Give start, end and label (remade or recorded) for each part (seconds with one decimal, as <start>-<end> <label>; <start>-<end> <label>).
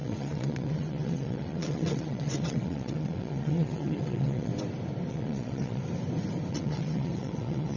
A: 0.0-4.5 remade; 4.5-5.1 recorded; 5.1-5.8 remade; 5.8-6.5 recorded; 6.5-7.8 remade